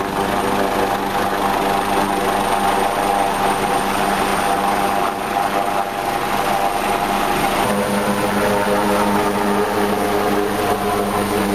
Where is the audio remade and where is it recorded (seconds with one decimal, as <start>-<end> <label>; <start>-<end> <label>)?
0.0-11.5 recorded